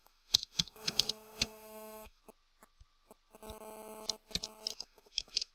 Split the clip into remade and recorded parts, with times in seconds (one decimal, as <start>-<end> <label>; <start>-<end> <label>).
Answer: 0.0-2.2 remade; 2.2-4.7 recorded; 4.7-5.5 remade